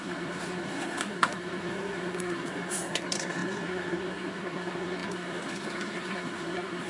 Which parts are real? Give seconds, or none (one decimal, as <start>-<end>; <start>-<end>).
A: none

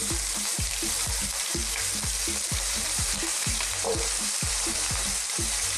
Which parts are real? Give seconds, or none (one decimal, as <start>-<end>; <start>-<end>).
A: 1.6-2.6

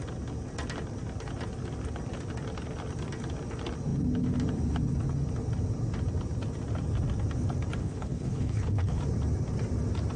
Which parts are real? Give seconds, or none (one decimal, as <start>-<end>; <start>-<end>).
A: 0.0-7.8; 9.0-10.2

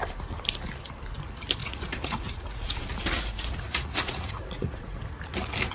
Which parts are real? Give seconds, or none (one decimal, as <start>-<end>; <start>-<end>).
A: 0.0-1.6; 5.0-5.7

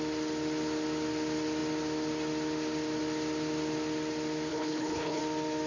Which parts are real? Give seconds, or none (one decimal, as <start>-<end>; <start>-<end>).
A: 0.0-4.5; 5.2-5.7

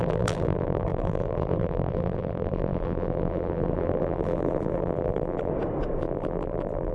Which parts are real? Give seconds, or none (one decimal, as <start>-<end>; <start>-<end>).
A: 5.5-6.0

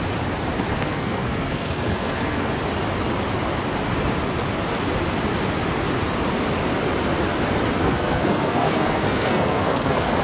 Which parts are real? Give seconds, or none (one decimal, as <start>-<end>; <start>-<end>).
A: 0.0-0.7; 2.5-7.8